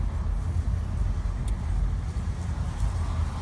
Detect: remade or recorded recorded